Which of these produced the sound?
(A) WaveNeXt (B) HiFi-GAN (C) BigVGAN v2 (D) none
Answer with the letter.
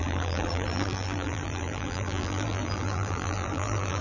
C